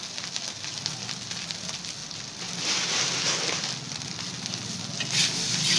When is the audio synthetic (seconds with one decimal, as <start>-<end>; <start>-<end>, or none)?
none